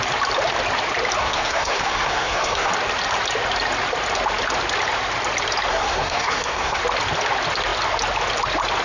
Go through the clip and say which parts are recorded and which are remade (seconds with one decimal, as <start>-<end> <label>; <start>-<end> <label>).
0.0-1.2 recorded; 1.2-2.7 remade; 2.7-5.7 recorded; 5.7-6.8 remade; 6.8-8.8 recorded